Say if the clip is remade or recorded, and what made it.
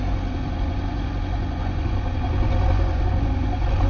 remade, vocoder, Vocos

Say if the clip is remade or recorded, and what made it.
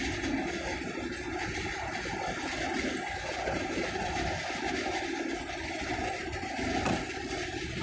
recorded